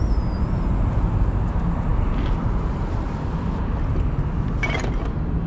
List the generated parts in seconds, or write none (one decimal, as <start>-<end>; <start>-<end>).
none